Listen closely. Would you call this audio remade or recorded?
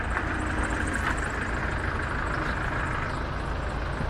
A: recorded